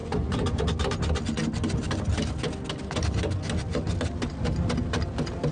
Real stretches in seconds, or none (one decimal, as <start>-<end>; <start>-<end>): 0.6-5.5